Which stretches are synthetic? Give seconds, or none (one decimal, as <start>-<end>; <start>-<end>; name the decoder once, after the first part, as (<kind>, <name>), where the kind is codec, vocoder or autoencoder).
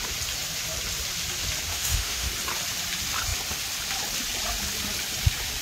1.7-2.3 (autoencoder, DAC-VAE)